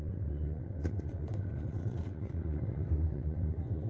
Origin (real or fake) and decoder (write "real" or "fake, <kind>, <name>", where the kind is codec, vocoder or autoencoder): fake, vocoder, WaveNeXt